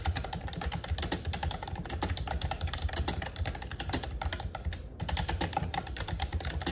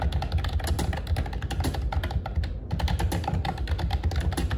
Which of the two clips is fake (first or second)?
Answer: first